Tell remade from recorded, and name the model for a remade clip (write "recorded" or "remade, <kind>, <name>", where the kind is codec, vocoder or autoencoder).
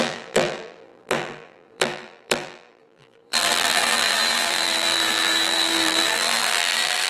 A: remade, vocoder, BigVGAN v2